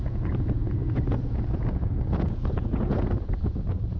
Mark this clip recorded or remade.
remade